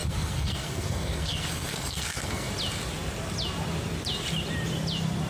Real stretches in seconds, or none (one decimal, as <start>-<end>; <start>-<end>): 2.5-5.3